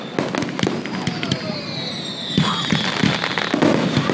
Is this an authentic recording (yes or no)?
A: yes